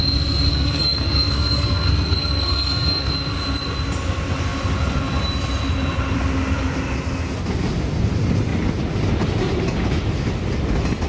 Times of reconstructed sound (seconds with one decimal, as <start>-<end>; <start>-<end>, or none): 0.5-3.1